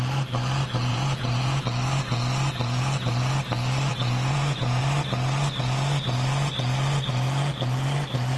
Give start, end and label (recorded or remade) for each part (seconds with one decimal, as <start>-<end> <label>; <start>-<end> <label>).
0.0-0.9 recorded; 0.9-1.6 remade; 1.6-3.9 recorded; 3.9-4.8 remade; 4.8-8.4 recorded